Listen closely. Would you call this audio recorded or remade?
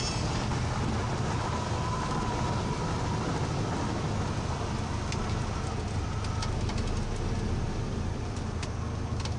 recorded